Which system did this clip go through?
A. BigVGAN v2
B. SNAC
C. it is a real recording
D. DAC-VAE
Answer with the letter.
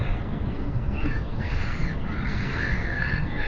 B